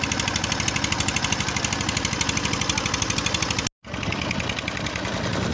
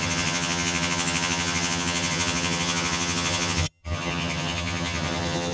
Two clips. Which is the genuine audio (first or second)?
first